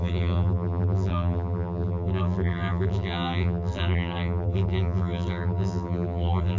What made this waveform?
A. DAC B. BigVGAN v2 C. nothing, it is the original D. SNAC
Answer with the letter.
B